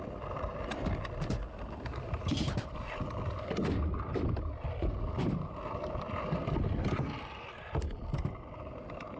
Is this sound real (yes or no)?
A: yes